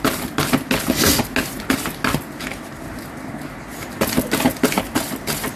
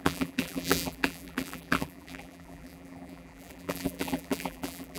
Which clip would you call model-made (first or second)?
second